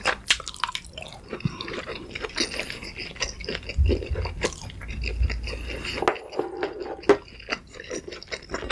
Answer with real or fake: real